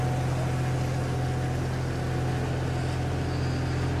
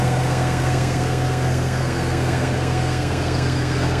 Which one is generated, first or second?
second